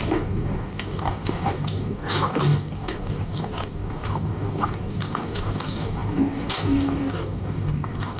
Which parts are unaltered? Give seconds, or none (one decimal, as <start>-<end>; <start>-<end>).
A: none

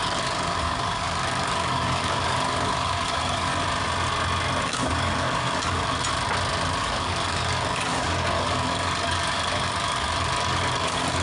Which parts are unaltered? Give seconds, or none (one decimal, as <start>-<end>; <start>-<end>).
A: 3.5-4.6; 6.0-6.8

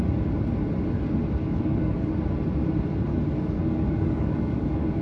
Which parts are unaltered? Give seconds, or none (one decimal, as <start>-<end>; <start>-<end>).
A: 0.0-1.4; 2.1-3.1

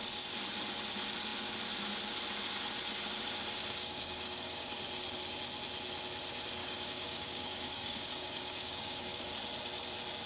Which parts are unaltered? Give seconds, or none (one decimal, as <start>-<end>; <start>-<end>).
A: 0.0-3.6; 4.7-6.6; 9.3-10.3

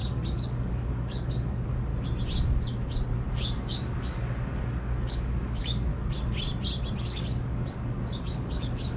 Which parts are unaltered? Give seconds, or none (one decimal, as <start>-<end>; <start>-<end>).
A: 1.9-3.3; 5.9-7.0